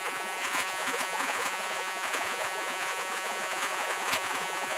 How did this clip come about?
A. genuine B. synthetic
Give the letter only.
B